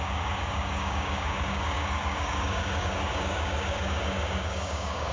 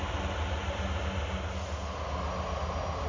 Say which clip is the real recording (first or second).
second